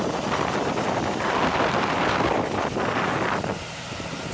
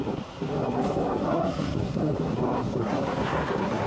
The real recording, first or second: first